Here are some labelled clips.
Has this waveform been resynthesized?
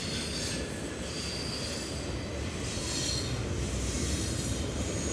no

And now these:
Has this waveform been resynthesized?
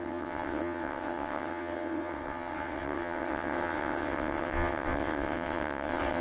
yes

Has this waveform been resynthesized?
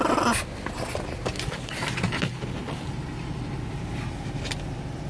no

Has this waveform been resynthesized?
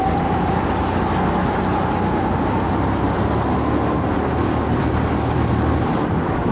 no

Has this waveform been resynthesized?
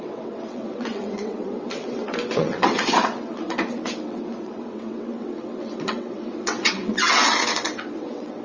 yes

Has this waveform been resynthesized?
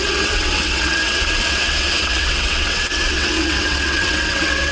yes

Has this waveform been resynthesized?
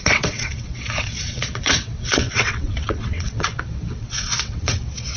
yes